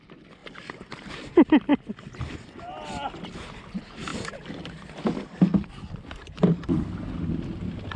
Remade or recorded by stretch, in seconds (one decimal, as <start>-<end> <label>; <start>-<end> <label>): 0.0-4.1 recorded; 4.1-4.9 remade; 4.9-8.0 recorded